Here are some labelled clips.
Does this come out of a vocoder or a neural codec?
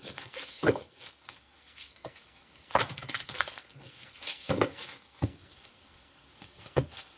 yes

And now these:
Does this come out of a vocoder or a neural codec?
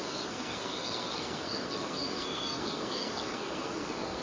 yes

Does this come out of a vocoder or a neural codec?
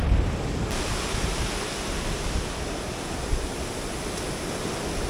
no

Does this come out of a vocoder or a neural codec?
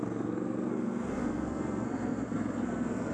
yes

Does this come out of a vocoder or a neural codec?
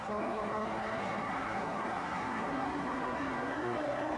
yes